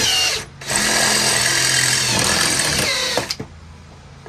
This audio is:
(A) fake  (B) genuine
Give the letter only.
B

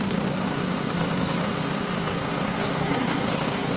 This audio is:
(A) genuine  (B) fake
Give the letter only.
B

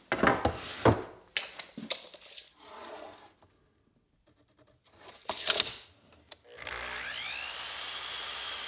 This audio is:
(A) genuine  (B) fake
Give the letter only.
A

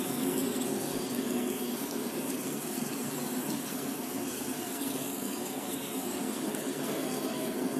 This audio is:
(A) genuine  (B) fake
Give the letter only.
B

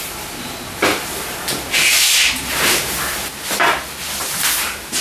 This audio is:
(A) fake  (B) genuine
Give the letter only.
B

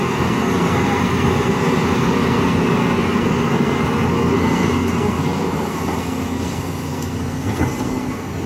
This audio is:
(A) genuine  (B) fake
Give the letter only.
B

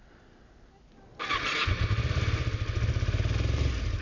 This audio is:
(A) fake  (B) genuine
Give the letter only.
B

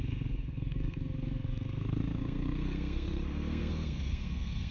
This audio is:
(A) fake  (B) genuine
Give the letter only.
A